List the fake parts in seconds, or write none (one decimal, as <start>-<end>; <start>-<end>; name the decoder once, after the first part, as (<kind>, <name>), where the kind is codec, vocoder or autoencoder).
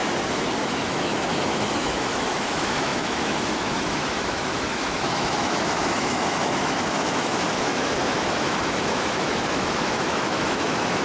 0.6-11.0 (autoencoder, DAC-VAE)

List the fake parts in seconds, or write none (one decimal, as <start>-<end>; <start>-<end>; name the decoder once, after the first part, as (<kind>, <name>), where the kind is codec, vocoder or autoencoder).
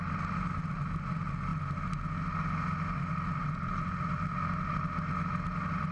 none